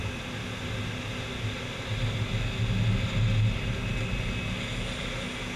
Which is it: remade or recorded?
recorded